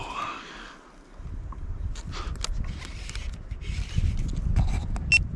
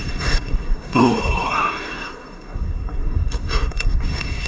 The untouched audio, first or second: first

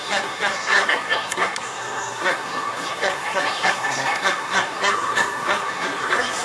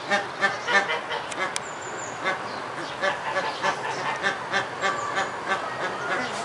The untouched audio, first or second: second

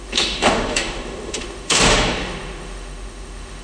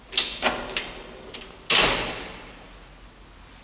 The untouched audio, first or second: second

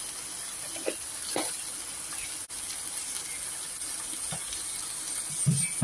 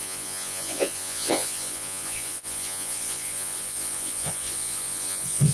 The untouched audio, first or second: first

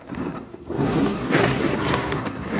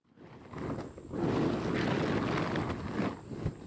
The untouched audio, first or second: second